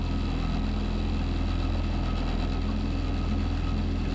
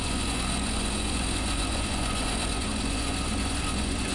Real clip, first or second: first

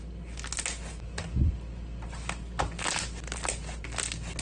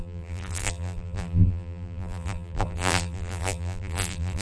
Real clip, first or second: first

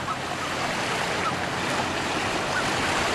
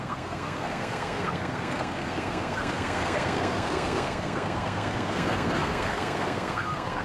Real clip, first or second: first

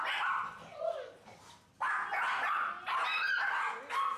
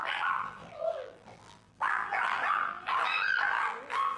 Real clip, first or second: first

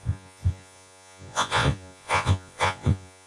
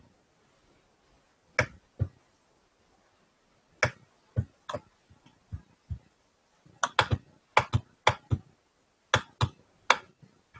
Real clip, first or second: second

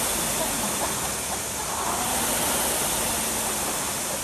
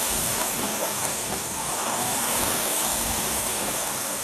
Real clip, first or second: first